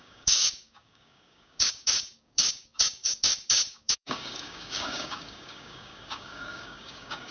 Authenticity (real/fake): fake